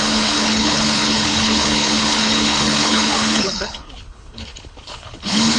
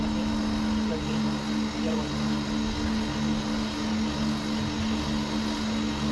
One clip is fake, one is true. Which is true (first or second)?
second